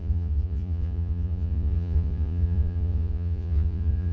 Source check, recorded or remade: remade